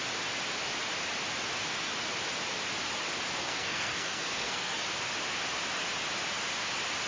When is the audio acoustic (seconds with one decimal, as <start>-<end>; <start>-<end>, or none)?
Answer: 0.0-3.4; 4.8-7.1